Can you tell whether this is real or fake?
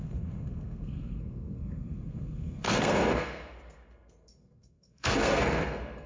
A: fake